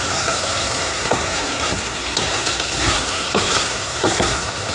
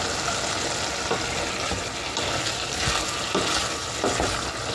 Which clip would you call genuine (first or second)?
second